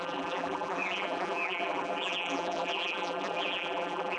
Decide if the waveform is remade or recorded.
remade